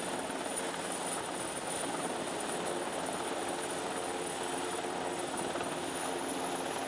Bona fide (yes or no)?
yes